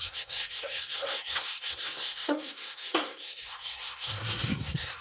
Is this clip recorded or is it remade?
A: remade